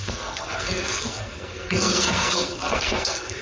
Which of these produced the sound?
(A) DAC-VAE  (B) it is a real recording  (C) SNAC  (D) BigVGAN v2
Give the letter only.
C